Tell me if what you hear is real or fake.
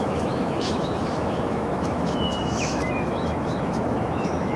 fake